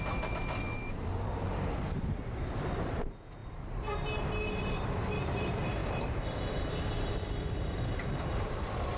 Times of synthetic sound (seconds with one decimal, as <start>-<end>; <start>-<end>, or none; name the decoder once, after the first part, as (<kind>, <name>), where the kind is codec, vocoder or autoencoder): 0.0-1.3 (vocoder, BigVGAN v2); 1.8-3.4; 5.3-9.0